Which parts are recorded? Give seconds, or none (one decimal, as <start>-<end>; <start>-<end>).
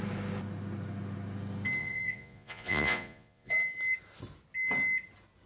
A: 0.0-1.8; 3.5-5.5